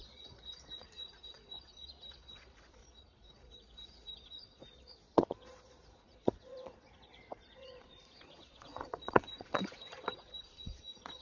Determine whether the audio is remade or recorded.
remade